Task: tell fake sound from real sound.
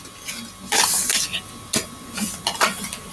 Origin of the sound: real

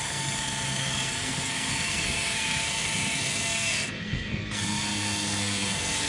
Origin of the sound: fake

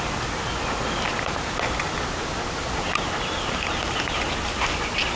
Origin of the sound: real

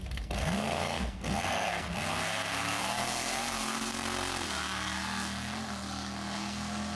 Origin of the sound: fake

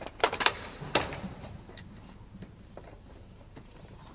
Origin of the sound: fake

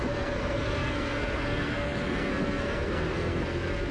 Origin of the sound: fake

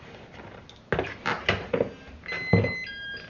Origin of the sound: real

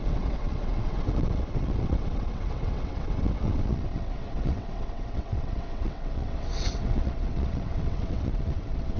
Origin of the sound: fake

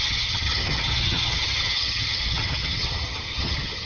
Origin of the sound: fake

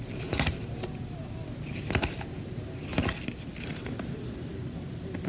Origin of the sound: real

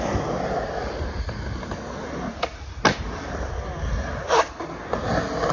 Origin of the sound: real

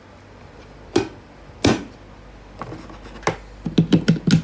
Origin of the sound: real